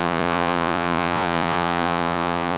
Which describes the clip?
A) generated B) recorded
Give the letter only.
A